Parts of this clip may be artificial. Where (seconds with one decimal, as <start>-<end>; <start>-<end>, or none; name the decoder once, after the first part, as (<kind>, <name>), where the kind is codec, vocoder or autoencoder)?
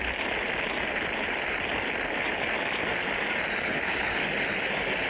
3.6-4.2 (codec, HILCodec)